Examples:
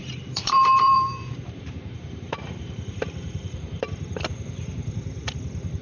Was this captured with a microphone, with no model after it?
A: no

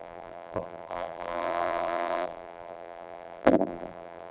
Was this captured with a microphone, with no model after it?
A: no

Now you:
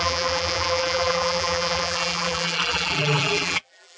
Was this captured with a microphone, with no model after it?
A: no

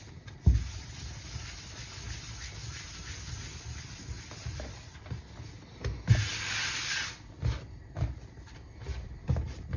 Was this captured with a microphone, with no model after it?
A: yes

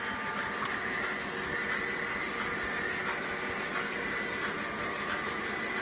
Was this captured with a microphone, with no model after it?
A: yes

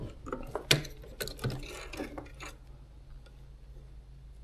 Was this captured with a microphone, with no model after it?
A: yes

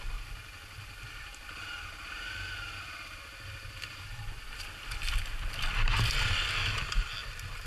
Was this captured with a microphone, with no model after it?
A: yes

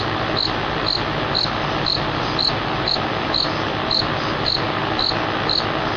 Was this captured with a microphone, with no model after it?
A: yes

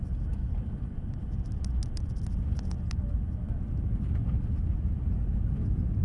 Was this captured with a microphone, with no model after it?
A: yes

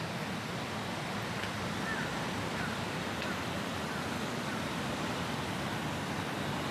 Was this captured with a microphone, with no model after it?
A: yes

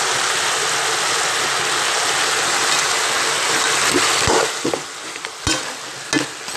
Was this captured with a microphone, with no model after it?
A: yes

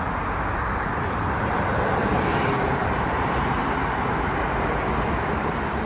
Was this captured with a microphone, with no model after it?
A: no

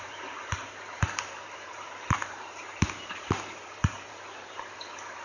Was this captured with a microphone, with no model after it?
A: no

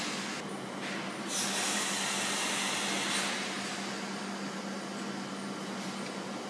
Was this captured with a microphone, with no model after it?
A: yes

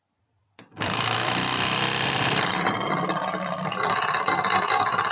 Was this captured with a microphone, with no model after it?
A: no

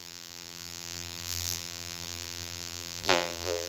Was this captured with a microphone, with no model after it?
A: no